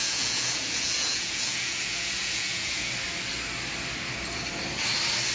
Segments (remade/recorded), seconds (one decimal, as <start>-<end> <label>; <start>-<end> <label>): 0.0-2.9 remade; 2.9-5.3 recorded